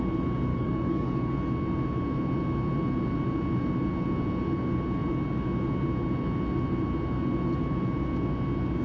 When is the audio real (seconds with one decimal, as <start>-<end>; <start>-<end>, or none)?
0.0-0.5; 1.3-8.8